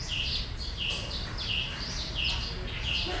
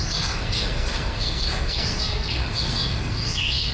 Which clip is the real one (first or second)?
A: first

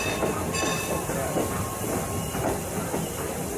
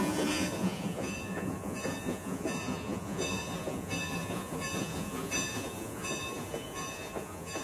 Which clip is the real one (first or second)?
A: first